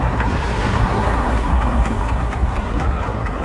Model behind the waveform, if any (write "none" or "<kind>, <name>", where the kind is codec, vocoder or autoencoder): codec, SNAC